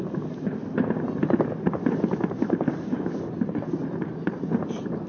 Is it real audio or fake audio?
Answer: real